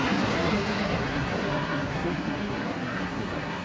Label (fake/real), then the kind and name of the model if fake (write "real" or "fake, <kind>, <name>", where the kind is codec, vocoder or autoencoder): fake, codec, SNAC